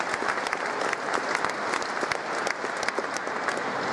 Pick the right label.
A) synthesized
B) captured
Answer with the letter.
B